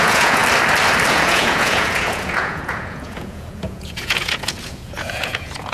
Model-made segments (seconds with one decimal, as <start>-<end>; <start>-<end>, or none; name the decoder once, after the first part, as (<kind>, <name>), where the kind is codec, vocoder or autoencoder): 0.0-0.4 (vocoder, Vocos); 1.1-5.7